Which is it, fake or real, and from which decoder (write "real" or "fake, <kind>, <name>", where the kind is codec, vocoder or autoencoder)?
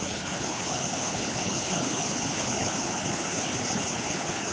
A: fake, codec, HILCodec